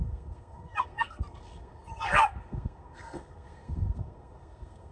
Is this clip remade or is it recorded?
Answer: remade